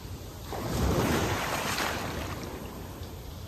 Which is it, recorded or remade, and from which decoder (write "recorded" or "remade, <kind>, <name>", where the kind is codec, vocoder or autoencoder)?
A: remade, vocoder, BigVGAN v2